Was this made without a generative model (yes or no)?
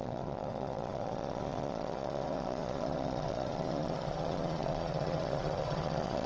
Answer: no